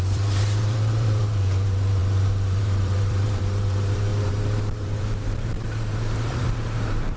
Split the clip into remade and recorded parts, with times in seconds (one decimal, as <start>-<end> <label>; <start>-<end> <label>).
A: 0.0-7.2 remade

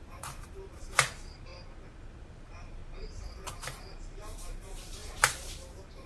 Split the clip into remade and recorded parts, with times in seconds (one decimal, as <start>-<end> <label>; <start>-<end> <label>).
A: 0.0-1.5 remade; 1.5-2.3 recorded; 2.3-2.8 remade; 2.8-3.5 recorded; 3.5-6.1 remade

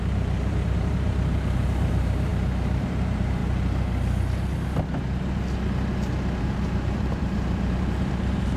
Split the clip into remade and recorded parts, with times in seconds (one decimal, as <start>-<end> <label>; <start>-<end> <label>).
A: 0.0-3.4 remade; 3.4-6.4 recorded; 6.4-8.6 remade

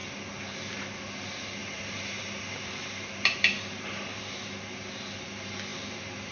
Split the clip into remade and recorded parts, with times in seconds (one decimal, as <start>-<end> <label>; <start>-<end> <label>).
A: 0.0-1.6 recorded; 1.6-4.2 remade; 4.2-6.3 recorded

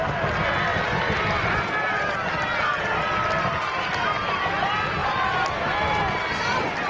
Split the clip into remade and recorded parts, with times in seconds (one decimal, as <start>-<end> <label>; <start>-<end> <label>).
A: 0.0-0.7 recorded; 0.7-1.5 remade; 1.5-5.0 recorded; 5.0-6.0 remade; 6.0-6.9 recorded

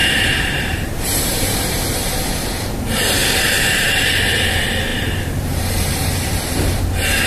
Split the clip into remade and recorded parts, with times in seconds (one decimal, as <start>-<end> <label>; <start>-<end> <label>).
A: 0.0-1.8 remade; 1.8-3.2 recorded; 3.2-4.0 remade; 4.0-4.9 recorded; 4.9-6.8 remade; 6.8-7.3 recorded

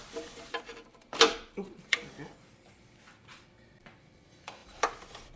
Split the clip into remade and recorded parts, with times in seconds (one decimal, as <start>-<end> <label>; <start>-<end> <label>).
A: 0.0-5.4 remade

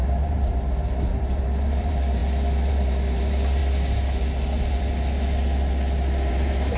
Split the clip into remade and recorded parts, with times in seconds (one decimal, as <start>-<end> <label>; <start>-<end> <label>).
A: 0.0-2.2 remade; 2.2-2.7 recorded; 2.7-3.6 remade; 3.6-6.3 recorded; 6.3-6.8 remade